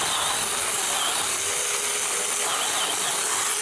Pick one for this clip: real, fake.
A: real